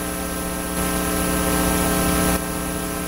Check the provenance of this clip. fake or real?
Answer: real